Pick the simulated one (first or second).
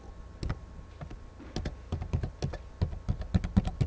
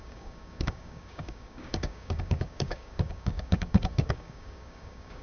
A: second